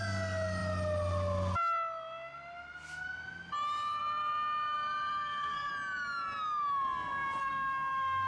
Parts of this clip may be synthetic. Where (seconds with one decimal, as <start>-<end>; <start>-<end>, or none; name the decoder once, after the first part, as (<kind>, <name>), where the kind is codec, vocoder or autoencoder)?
5.1-5.7 (codec, SNAC); 7.4-8.3